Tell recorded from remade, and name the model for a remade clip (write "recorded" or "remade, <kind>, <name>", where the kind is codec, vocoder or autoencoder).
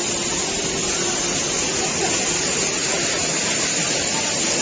recorded